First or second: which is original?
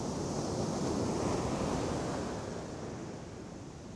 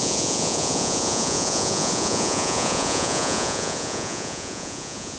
first